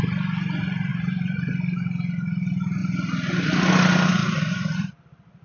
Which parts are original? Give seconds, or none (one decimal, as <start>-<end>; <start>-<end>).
0.0-0.9; 1.5-4.2; 4.9-5.4